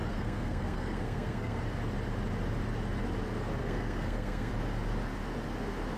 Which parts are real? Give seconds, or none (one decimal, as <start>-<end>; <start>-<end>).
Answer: 1.6-3.6; 4.5-6.0